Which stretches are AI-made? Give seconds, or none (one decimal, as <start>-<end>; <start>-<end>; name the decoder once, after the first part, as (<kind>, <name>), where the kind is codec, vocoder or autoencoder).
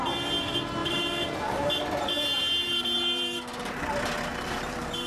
0.8-3.8 (vocoder, BigVGAN v2); 4.3-5.1